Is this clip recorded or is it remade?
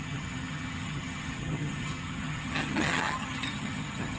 remade